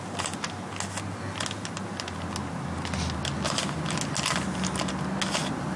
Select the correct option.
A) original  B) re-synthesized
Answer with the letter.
A